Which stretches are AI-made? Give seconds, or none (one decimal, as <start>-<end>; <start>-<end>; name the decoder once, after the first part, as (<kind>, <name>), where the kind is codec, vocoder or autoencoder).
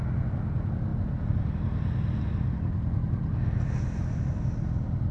none